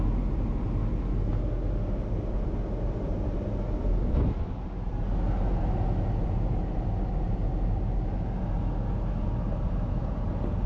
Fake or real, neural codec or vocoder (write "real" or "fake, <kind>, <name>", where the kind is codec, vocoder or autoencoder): real